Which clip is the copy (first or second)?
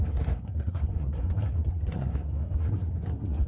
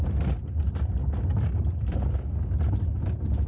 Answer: first